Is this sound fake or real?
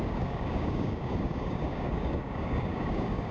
fake